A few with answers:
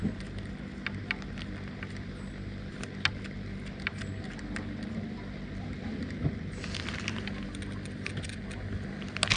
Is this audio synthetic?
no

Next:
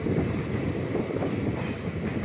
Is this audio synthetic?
no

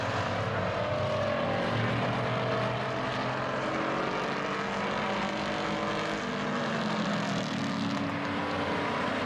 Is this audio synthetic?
no